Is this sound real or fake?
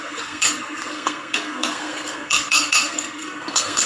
fake